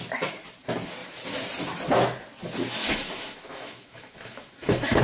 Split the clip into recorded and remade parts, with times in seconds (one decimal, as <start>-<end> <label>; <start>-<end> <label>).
0.0-2.8 recorded; 2.8-5.0 remade